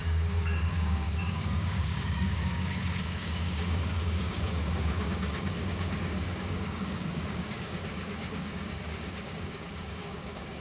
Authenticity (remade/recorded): remade